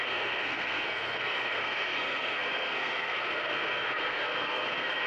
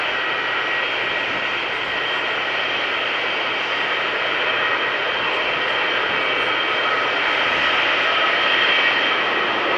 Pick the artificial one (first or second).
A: first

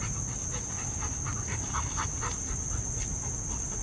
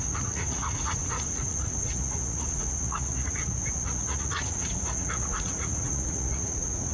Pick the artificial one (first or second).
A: second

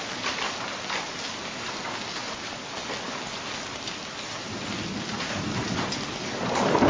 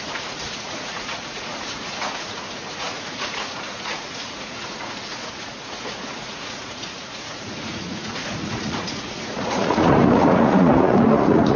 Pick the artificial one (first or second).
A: second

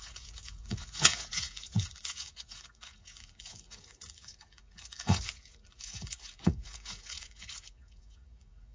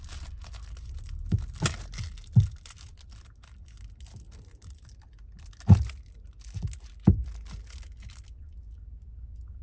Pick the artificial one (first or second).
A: first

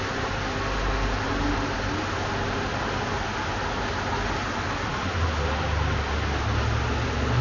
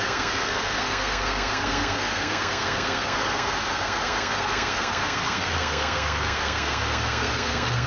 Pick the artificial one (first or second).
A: second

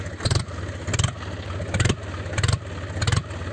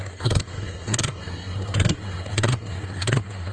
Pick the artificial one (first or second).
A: second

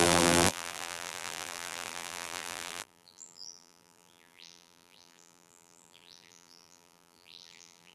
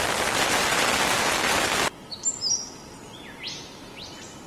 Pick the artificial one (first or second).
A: first